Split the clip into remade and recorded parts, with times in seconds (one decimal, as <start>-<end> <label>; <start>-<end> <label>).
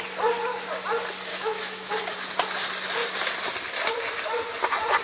0.0-1.3 recorded; 1.3-1.9 remade; 1.9-5.0 recorded